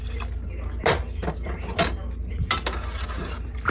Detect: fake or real real